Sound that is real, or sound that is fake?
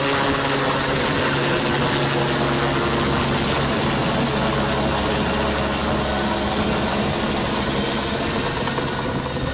real